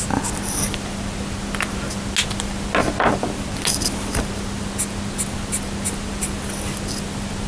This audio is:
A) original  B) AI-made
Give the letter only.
A